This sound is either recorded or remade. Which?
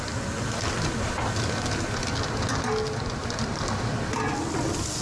recorded